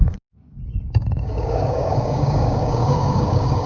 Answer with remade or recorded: remade